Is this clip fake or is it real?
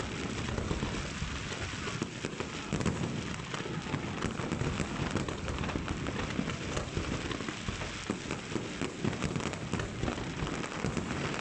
real